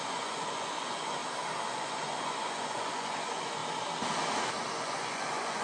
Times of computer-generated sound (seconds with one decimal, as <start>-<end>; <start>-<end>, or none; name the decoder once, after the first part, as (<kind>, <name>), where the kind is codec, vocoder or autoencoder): 0.0-1.2 (vocoder, Vocos); 1.7-3.6; 4.8-5.6